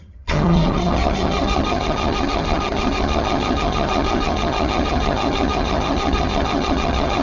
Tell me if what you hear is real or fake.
fake